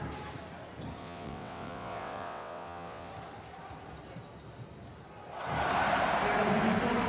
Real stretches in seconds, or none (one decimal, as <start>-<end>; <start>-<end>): 0.0-1.0; 3.1-7.1